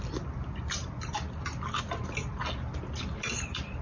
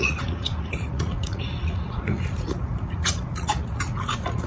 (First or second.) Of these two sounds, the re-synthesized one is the second